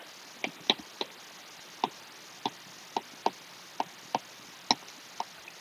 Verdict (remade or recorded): recorded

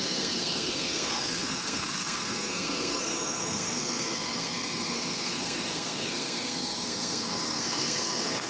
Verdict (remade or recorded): remade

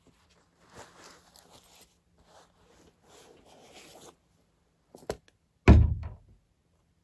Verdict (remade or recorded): recorded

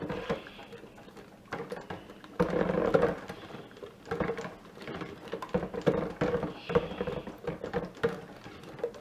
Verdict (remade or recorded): recorded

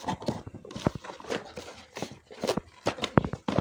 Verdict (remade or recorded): remade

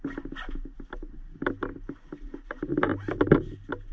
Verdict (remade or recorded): recorded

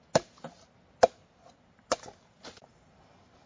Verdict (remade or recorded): recorded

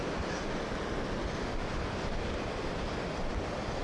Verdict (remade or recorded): recorded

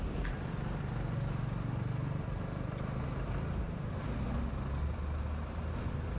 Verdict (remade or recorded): recorded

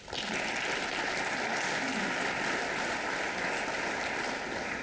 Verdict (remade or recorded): recorded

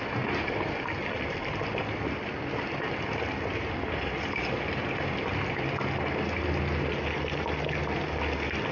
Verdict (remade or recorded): remade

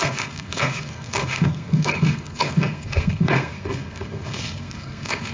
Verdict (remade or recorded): remade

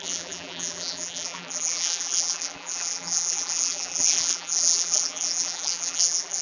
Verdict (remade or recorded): remade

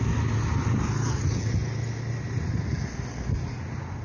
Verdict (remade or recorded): recorded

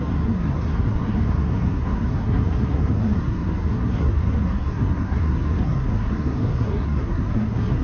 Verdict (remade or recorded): remade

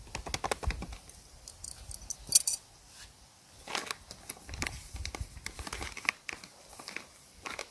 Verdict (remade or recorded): recorded